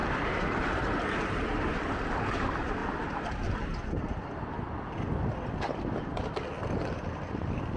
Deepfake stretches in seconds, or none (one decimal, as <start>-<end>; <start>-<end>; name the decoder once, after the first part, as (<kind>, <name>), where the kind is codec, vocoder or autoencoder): 1.3-2.8 (vocoder, BigVGAN v2); 6.7-7.8